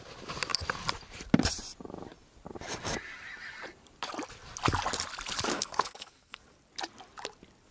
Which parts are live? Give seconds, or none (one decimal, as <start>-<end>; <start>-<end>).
0.0-5.5; 6.4-7.7